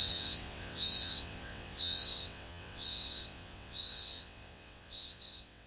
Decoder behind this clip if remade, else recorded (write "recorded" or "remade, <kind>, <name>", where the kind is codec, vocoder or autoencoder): remade, vocoder, WaveNeXt